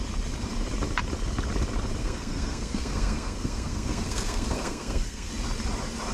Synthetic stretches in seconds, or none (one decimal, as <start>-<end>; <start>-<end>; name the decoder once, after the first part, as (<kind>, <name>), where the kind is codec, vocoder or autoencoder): 2.0-5.3 (codec, SNAC)